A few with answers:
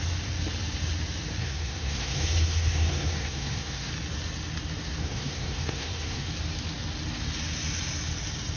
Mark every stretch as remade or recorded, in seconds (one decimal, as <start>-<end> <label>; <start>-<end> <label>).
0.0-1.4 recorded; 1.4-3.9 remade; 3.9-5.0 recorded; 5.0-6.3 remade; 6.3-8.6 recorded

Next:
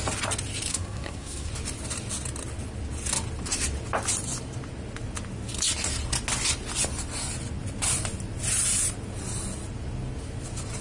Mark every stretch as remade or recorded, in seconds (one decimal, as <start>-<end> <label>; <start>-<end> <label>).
0.0-0.7 recorded; 0.7-1.5 remade; 1.5-10.8 recorded

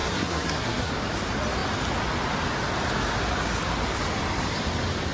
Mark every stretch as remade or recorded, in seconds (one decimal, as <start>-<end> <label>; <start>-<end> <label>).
0.0-0.9 remade; 0.9-5.1 recorded

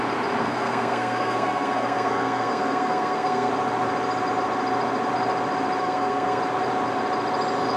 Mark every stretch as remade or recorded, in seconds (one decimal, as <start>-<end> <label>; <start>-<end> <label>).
0.0-0.4 recorded; 0.4-3.5 remade; 3.5-5.8 recorded; 5.8-6.4 remade; 6.4-7.8 recorded